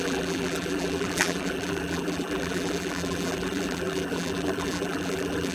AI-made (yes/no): yes